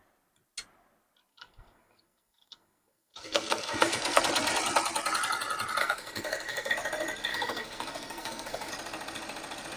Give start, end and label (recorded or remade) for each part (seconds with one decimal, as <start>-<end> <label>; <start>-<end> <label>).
0.0-1.3 recorded; 1.3-4.2 remade; 4.2-5.8 recorded; 5.8-6.7 remade; 6.7-7.3 recorded; 7.3-8.7 remade; 8.7-9.8 recorded